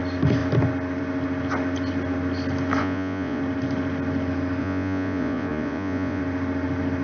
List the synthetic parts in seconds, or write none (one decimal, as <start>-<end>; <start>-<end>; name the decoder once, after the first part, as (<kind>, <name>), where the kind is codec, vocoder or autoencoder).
2.8-3.4 (vocoder, Vocos); 4.6-6.2